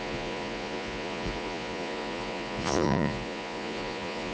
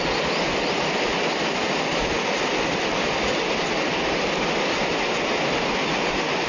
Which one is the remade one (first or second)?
first